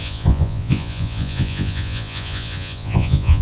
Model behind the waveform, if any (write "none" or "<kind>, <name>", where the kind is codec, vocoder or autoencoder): vocoder, Vocos